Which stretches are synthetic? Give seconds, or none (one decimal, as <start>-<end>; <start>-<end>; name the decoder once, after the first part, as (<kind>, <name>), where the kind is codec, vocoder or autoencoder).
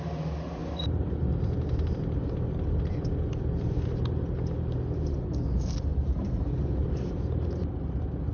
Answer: 0.6-4.0 (vocoder, BigVGAN v2); 5.9-7.1